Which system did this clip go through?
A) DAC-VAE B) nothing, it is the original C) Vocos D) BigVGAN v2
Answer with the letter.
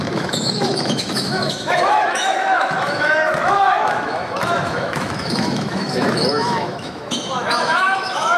A